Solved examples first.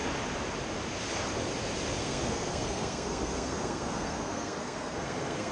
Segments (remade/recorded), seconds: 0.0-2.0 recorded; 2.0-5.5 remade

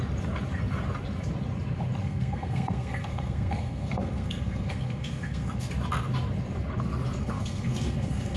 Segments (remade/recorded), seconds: 0.0-2.0 recorded; 2.0-5.7 remade; 5.7-7.2 recorded; 7.2-8.4 remade

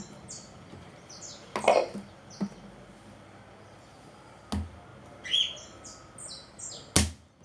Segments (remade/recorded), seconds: 0.0-7.4 recorded